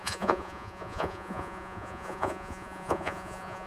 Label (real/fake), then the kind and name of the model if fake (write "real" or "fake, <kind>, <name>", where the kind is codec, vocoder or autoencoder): fake, vocoder, Vocos